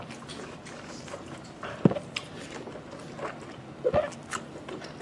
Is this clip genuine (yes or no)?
yes